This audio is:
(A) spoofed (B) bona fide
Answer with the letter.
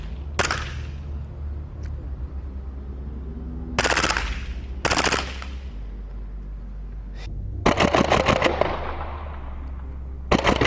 B